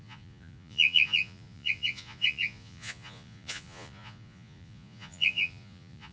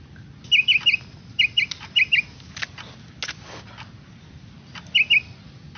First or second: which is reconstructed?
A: first